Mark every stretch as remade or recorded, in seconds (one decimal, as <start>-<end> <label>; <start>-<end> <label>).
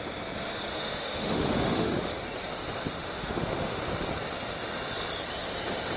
0.0-0.7 recorded; 0.7-2.1 remade; 2.1-2.9 recorded; 2.9-3.8 remade; 3.8-6.0 recorded